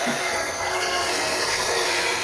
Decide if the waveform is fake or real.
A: fake